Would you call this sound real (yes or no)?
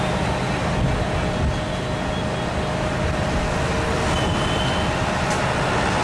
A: yes